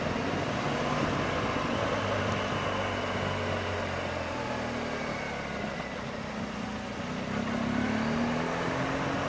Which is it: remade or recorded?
recorded